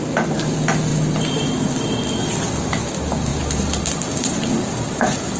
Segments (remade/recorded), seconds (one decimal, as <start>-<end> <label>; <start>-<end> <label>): 0.0-0.9 recorded; 0.9-1.7 remade; 1.7-3.3 recorded; 3.3-5.4 remade